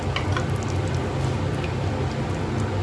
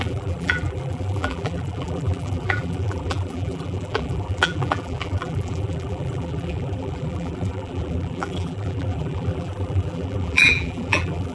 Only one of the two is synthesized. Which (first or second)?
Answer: second